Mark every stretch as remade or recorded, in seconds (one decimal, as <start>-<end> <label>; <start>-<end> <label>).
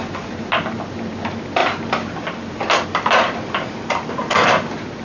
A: 0.0-5.0 recorded